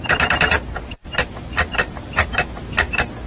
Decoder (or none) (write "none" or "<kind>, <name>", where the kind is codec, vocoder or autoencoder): vocoder, BigVGAN v2